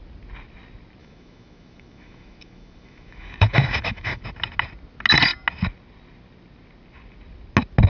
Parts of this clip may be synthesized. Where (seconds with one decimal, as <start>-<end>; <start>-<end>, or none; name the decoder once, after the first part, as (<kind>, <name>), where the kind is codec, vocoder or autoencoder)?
1.0-4.2 (autoencoder, DAC-VAE)